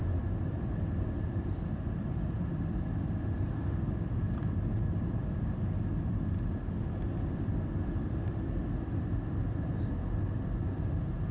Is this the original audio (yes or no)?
yes